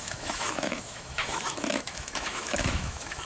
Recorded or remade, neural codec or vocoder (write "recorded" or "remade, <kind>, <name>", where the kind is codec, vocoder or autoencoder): remade, autoencoder, DAC-VAE